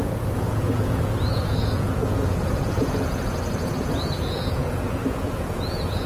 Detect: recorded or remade remade